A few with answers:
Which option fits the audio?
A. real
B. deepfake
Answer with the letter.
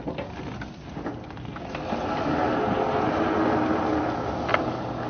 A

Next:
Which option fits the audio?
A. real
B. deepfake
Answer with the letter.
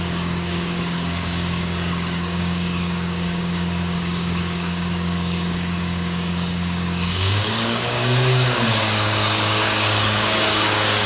B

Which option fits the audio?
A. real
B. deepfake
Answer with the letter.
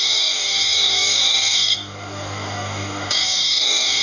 B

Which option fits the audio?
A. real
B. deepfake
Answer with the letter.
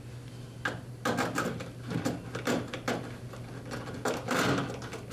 A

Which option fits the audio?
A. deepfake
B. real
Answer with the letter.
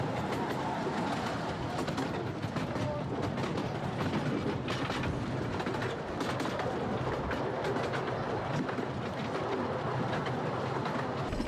B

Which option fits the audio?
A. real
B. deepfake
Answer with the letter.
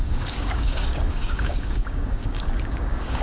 B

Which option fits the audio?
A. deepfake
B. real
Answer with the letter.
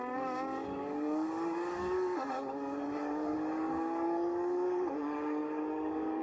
A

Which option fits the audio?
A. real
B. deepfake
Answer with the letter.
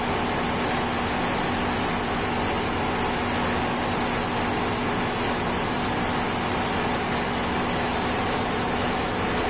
A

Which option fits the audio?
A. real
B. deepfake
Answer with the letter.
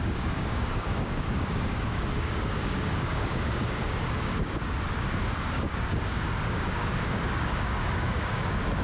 B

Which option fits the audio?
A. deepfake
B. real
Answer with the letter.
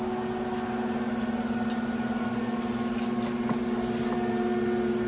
B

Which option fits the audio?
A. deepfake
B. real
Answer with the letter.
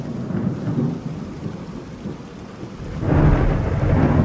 B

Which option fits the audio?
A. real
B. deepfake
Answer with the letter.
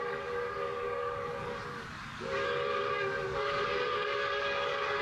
B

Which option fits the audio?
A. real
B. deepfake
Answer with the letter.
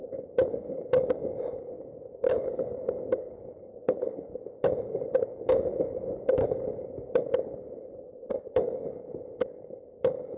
B